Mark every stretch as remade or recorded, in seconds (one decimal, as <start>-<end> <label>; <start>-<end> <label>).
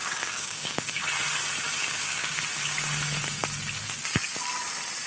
0.0-1.0 remade; 1.0-1.8 recorded; 1.8-2.4 remade; 2.4-5.1 recorded